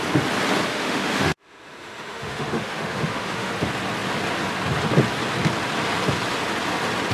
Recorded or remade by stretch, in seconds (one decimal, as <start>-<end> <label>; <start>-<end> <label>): 0.0-0.7 recorded; 0.7-3.5 remade; 3.5-7.1 recorded